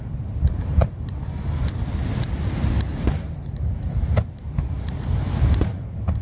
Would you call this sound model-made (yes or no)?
yes